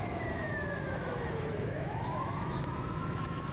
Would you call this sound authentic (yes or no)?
no